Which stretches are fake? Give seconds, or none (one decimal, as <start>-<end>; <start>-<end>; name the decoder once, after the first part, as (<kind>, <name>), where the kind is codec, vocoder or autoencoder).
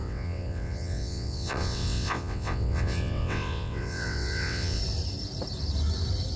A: 0.0-4.8 (vocoder, WaveNeXt)